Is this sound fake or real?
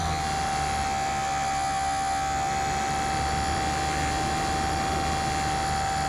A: real